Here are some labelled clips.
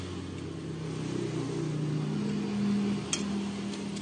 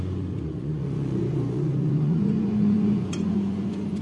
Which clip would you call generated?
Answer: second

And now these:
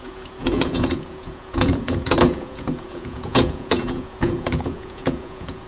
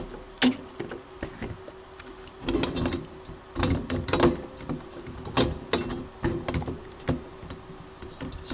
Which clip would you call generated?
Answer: first